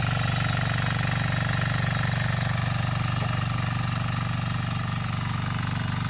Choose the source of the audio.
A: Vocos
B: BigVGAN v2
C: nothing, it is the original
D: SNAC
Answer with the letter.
C